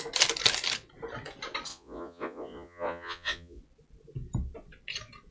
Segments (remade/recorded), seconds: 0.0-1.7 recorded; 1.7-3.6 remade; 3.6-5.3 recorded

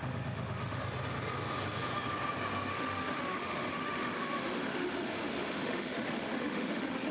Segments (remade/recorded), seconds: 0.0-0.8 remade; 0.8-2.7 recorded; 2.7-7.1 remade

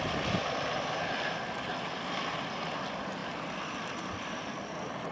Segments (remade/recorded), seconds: 0.0-0.4 recorded; 0.4-2.7 remade; 2.7-3.2 recorded; 3.2-4.5 remade; 4.5-5.1 recorded

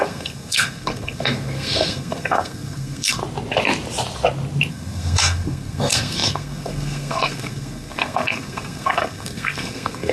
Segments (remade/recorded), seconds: 0.0-3.2 remade; 3.2-4.7 recorded; 4.7-10.1 remade

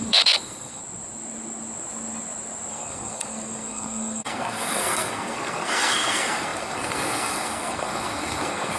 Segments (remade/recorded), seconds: 0.0-0.8 remade; 0.8-2.7 recorded; 2.7-8.8 remade

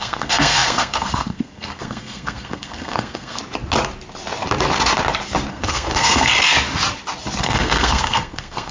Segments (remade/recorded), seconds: 0.0-3.4 remade; 3.4-5.5 recorded; 5.5-6.3 remade; 6.3-7.4 recorded; 7.4-8.7 remade